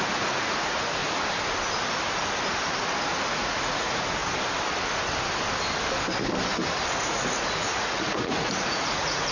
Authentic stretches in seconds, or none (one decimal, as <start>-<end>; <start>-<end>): 1.0-3.3; 4.2-6.9